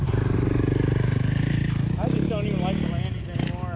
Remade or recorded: recorded